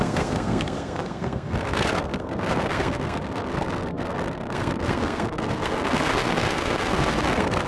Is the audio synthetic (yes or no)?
yes